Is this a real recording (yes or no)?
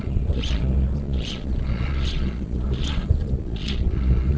no